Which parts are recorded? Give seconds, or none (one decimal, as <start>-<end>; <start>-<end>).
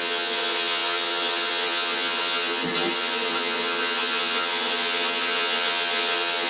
none